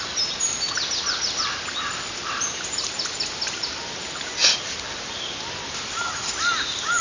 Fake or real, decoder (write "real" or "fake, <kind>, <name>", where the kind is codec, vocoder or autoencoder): real